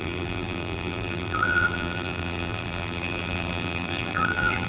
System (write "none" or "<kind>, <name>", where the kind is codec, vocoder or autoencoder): vocoder, BigVGAN v2